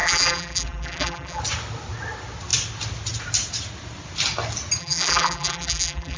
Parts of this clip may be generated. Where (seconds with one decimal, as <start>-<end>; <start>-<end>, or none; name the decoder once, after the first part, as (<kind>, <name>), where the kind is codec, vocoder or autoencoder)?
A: 0.0-1.4 (vocoder, BigVGAN v2); 4.8-6.2